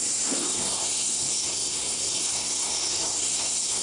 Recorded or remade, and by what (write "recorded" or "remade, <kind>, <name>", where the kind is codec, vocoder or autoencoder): remade, codec, SNAC